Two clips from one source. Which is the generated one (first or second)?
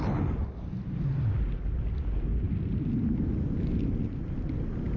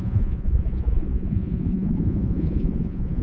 second